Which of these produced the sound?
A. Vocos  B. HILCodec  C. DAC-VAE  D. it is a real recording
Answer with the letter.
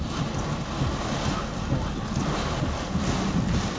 D